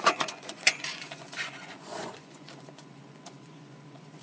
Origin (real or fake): fake